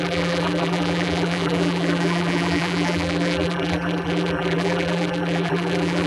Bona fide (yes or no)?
no